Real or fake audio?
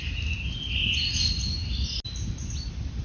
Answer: real